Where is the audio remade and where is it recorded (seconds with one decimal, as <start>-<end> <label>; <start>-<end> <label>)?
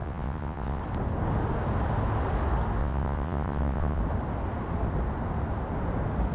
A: 0.0-0.8 remade; 0.8-2.8 recorded; 2.8-4.0 remade; 4.0-6.3 recorded